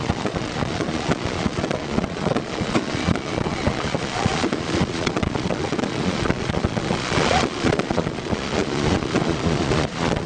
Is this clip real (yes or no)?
no